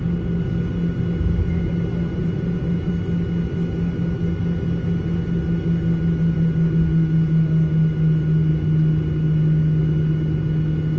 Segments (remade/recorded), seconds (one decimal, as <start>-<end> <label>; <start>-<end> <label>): 0.0-2.2 recorded; 2.2-2.9 remade; 2.9-11.0 recorded